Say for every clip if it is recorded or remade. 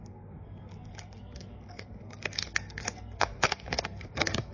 remade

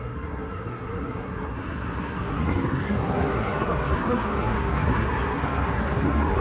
remade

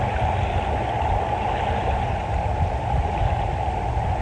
recorded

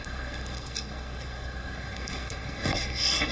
remade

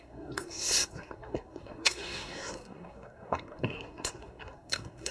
remade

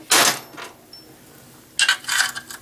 recorded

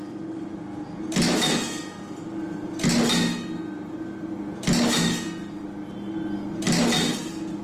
recorded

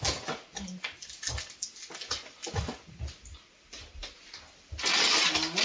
recorded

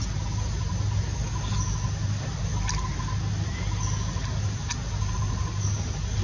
recorded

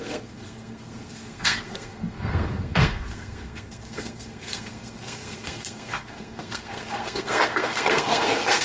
remade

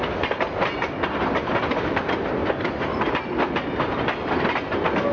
recorded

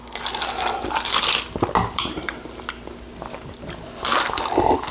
recorded